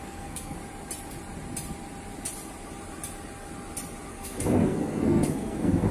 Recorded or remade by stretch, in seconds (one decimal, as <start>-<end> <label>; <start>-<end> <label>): 0.0-0.6 remade; 0.6-4.1 recorded; 4.1-5.9 remade